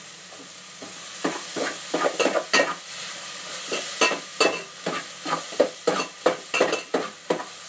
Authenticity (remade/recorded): recorded